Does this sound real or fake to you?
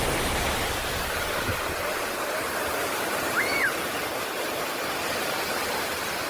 real